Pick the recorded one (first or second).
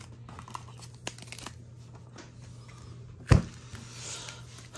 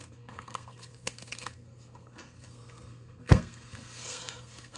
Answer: first